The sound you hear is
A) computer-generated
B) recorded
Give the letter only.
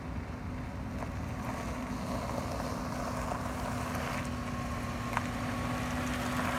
B